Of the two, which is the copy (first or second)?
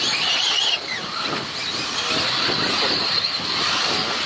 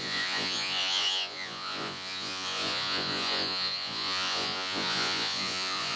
second